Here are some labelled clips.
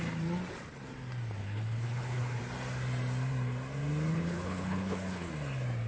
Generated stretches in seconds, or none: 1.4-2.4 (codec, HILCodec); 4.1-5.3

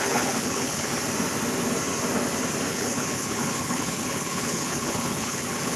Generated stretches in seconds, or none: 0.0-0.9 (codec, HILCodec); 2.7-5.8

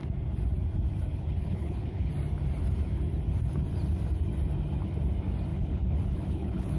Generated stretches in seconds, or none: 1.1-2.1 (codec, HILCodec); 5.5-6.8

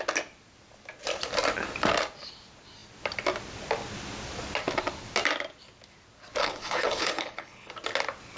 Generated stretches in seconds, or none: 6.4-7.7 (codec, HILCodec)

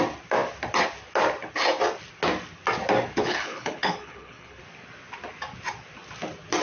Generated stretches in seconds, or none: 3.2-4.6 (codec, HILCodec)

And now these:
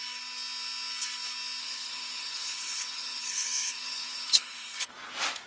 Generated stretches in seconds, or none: 1.6-4.9 (codec, HILCodec)